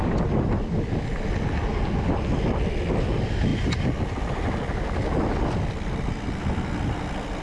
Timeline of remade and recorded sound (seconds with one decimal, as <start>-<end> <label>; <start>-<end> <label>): 0.0-7.4 recorded